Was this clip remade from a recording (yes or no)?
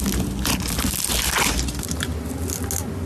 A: no